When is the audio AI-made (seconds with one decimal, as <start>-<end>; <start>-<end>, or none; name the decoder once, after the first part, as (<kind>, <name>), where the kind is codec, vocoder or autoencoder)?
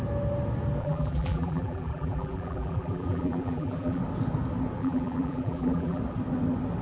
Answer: 0.8-4.0 (vocoder, BigVGAN v2); 4.8-6.0